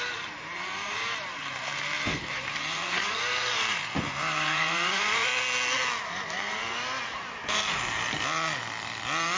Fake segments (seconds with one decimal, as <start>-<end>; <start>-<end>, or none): 0.0-5.3; 6.1-7.6